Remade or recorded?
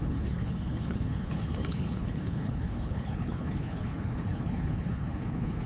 remade